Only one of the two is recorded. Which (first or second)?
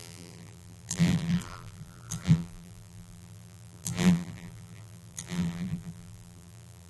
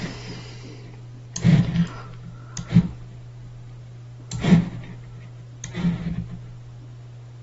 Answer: second